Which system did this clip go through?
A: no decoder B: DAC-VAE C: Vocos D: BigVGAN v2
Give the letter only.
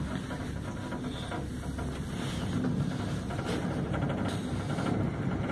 A